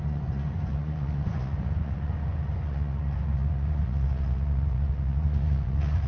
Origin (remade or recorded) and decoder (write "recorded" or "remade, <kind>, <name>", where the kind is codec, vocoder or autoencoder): remade, vocoder, Vocos